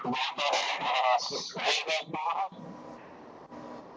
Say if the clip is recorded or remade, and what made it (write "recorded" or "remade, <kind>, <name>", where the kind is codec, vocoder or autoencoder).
remade, vocoder, BigVGAN v2